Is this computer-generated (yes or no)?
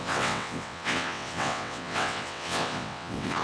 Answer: yes